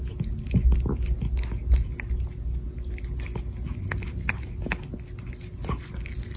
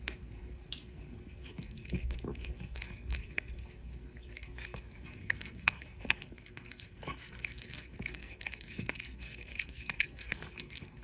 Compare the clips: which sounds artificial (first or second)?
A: second